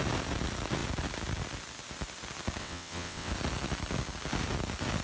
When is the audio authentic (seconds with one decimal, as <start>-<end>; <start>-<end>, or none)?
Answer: 0.0-2.6; 3.3-5.0